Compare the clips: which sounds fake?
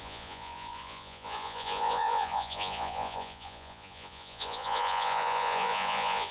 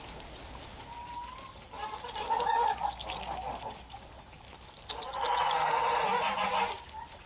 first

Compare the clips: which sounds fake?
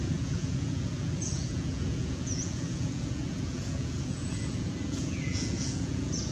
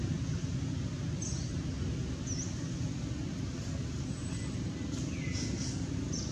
first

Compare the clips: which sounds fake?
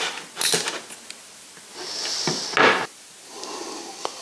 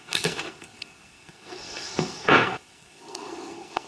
second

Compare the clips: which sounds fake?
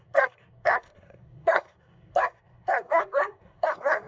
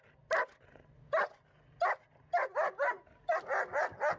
first